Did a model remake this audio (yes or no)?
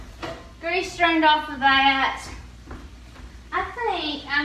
no